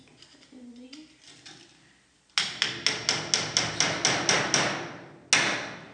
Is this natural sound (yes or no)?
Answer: yes